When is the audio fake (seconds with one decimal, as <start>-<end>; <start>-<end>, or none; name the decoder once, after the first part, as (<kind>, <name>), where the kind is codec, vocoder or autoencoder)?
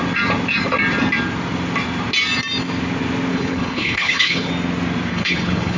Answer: 3.3-4.5 (codec, HILCodec); 5.1-5.8